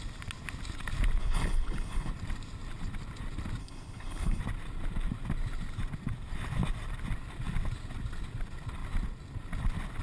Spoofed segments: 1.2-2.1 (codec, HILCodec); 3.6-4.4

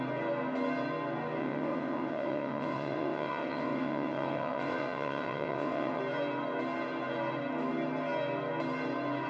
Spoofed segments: 1.4-6.0 (vocoder, WaveNeXt)

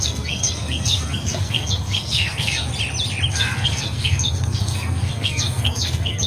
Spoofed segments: 0.0-2.7 (codec, SNAC); 3.3-6.3

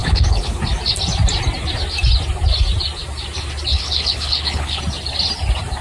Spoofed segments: 0.0-0.6 (codec, HILCodec); 3.7-4.8

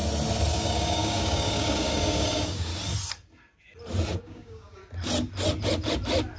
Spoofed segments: 0.5-2.7 (codec, DAC); 4.2-4.8

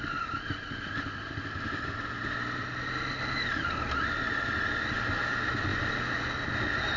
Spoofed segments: none